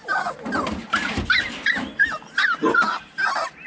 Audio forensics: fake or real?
real